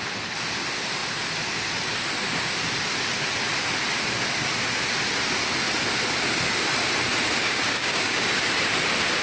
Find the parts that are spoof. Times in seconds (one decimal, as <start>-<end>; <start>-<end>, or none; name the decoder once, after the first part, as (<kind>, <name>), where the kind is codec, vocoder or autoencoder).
7.4-8.3 (codec, DAC)